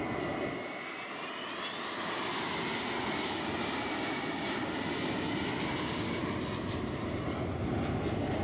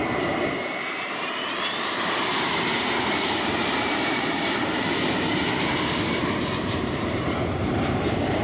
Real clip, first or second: first